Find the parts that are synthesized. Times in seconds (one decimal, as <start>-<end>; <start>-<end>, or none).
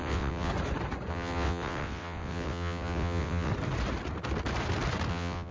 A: 0.0-0.5; 1.1-3.5; 5.1-5.5